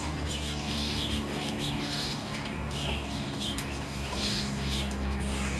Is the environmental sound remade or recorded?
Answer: remade